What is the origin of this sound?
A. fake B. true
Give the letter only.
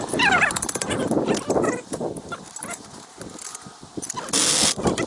B